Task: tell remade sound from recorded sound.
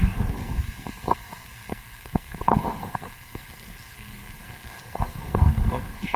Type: remade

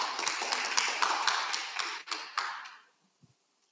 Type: recorded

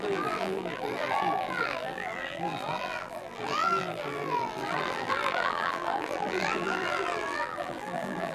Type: remade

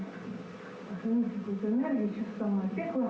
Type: recorded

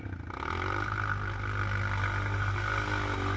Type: recorded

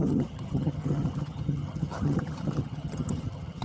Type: remade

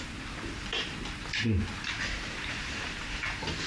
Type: recorded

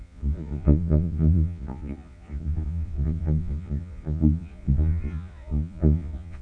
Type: remade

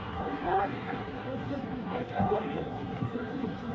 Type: remade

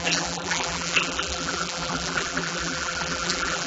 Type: remade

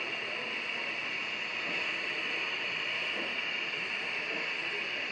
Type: recorded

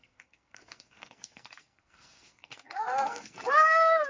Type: remade